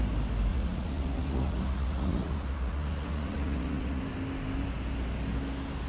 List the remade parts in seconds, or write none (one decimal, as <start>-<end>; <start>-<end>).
0.5-4.0